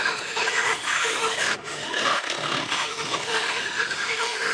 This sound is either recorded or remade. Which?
remade